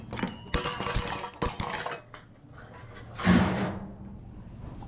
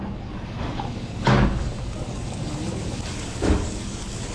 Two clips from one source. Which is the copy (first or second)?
second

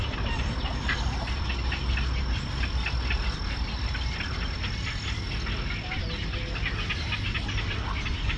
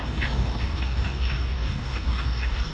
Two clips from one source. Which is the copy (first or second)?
second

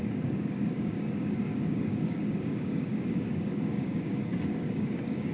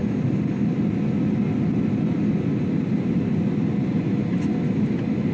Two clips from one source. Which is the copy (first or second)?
first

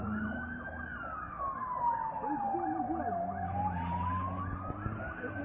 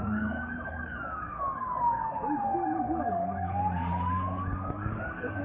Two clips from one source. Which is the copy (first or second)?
second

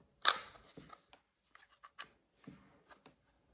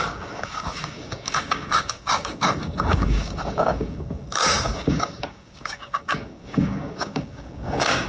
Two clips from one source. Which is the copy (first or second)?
second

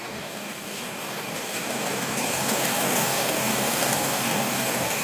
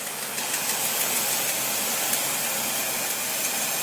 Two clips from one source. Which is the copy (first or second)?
first